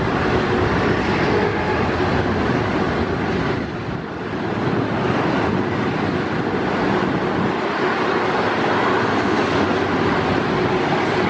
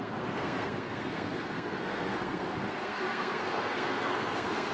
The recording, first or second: first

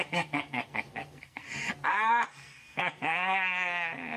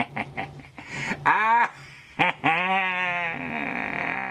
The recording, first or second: second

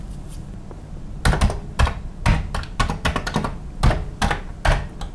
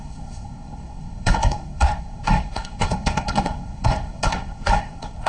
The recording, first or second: first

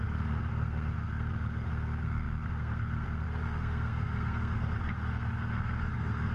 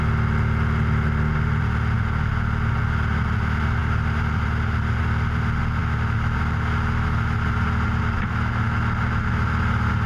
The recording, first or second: second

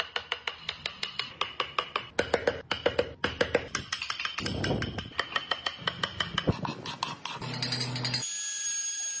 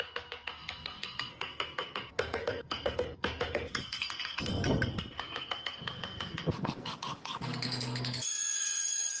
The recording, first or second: first